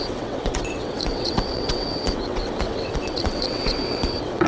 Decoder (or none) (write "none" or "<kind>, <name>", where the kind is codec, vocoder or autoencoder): vocoder, WaveNeXt